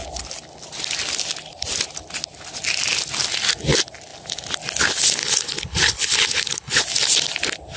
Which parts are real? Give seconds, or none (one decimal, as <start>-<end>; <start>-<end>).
0.0-5.2; 6.8-7.8